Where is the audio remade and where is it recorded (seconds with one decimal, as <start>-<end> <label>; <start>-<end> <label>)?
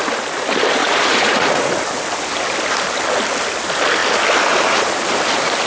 0.0-0.8 recorded; 0.8-1.7 remade; 1.7-5.7 recorded